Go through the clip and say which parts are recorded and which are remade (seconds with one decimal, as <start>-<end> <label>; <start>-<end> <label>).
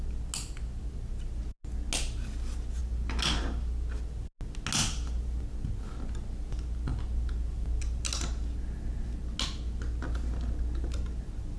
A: 0.0-11.6 recorded